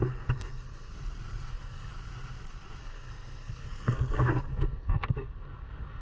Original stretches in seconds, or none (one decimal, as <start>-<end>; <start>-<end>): 0.9-1.5; 1.9-2.8